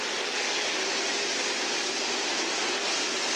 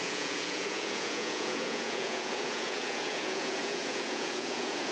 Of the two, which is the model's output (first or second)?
second